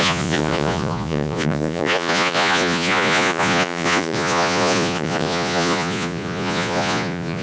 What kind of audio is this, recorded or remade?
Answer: remade